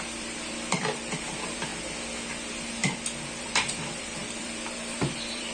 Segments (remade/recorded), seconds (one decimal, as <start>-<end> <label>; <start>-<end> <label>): 0.0-1.7 remade; 1.7-2.3 recorded; 2.3-2.8 remade; 2.8-3.4 recorded; 3.4-5.5 remade